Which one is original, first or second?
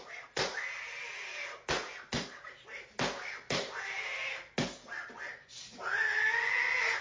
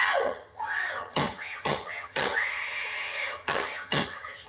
first